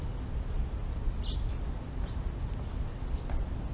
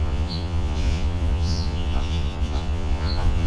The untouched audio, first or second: first